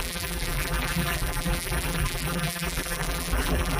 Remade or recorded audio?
remade